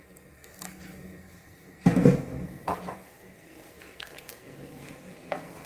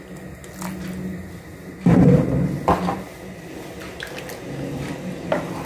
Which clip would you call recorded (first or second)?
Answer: second